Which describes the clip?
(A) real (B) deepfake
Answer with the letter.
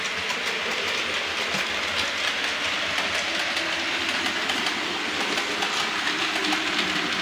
A